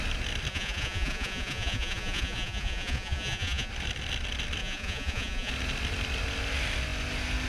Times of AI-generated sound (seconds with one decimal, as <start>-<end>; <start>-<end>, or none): 0.5-3.7; 4.6-5.5